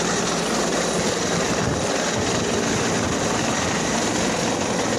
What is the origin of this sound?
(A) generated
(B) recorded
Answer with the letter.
B